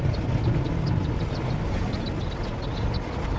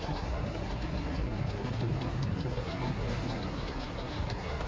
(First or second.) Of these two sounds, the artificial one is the second